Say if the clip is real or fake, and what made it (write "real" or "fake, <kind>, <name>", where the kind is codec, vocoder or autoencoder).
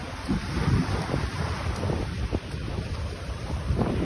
fake, vocoder, BigVGAN v2